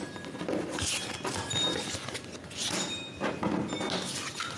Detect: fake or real real